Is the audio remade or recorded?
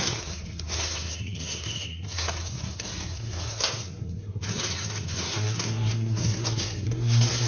remade